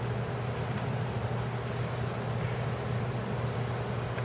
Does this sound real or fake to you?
real